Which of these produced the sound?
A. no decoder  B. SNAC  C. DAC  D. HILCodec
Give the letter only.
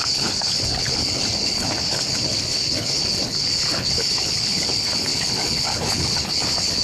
D